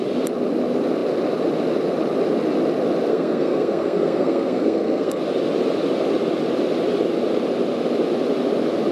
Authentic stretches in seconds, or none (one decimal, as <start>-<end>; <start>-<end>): 0.0-3.1; 5.2-8.9